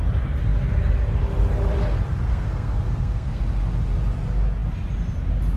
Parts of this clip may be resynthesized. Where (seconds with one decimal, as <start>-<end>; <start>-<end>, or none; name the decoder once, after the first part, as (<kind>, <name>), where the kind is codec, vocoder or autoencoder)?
2.3-3.4 (codec, SNAC)